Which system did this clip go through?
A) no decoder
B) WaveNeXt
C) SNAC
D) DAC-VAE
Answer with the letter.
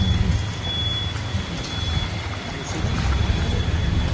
A